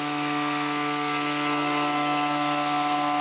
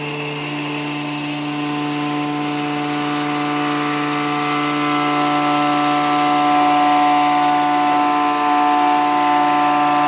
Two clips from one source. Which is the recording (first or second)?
second